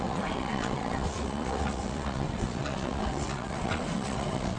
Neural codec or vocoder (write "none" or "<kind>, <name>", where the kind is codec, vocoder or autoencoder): vocoder, WaveNeXt